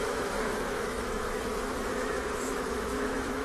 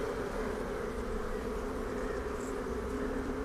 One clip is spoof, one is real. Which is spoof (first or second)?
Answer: first